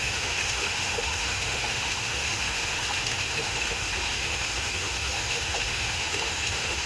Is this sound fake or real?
fake